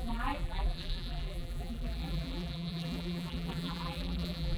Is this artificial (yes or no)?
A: yes